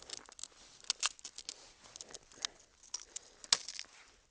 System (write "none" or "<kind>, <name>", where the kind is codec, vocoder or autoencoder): none